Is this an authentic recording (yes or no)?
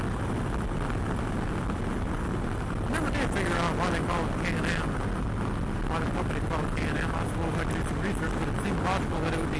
yes